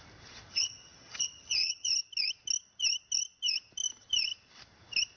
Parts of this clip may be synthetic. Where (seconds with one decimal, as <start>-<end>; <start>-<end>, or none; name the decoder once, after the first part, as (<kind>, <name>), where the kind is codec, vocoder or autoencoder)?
0.5-1.9 (vocoder, HiFi-GAN)